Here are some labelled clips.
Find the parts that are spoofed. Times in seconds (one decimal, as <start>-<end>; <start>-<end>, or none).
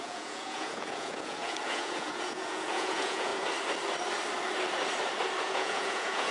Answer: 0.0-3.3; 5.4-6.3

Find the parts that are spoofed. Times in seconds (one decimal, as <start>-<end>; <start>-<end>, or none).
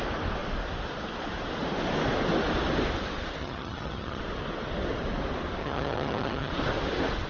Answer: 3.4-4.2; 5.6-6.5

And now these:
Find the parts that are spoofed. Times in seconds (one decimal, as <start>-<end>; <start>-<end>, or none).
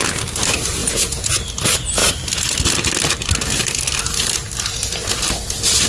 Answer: 0.8-1.3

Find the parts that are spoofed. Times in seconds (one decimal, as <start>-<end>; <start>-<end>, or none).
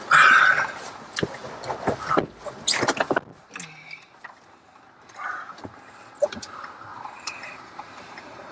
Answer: 6.9-8.5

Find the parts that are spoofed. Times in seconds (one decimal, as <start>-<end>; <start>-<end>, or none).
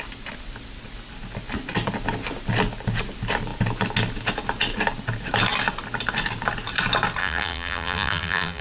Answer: 7.2-8.6